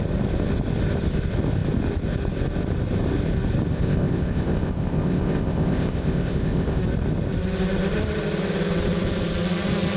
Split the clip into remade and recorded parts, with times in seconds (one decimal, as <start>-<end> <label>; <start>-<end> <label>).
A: 0.0-3.7 recorded; 3.7-6.8 remade; 6.8-10.0 recorded